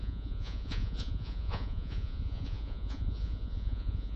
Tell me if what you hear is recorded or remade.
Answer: remade